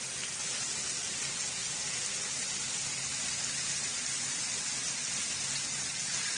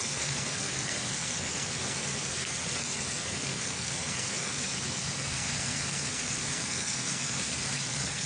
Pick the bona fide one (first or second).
first